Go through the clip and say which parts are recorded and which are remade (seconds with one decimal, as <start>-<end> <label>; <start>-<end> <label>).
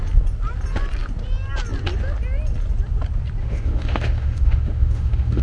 0.0-3.4 recorded; 3.4-5.4 remade